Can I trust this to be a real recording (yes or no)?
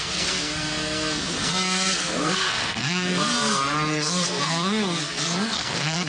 no